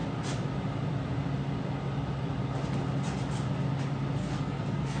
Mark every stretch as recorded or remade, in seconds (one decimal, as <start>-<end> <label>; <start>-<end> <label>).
0.0-4.2 recorded; 4.2-5.0 remade

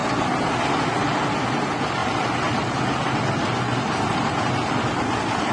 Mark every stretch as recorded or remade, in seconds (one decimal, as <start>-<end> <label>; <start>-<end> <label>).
0.0-5.5 recorded

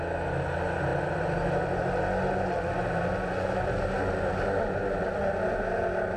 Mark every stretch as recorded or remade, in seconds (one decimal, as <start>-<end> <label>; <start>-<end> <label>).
0.0-6.2 recorded